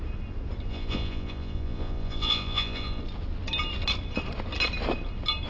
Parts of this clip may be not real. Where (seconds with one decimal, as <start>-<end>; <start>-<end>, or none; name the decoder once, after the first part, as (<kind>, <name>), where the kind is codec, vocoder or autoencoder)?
0.7-3.0 (vocoder, Vocos)